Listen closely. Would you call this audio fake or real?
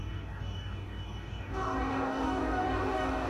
fake